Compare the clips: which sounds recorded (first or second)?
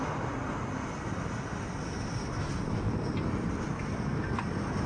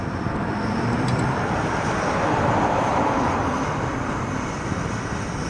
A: first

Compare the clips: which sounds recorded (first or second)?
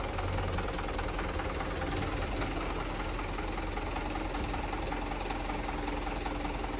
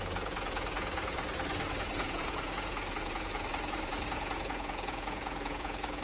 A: first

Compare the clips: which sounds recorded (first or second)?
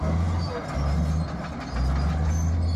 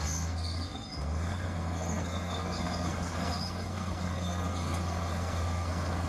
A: first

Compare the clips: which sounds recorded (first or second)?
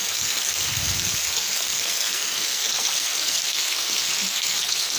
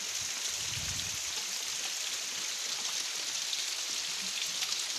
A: second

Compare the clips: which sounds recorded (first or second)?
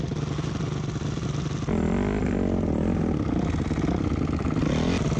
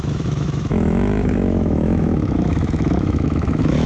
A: first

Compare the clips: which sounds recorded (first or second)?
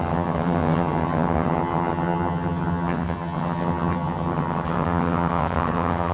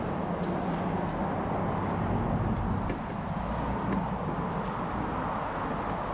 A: second